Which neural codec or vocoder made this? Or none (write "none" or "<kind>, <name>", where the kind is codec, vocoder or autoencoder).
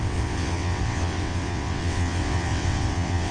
vocoder, WaveNeXt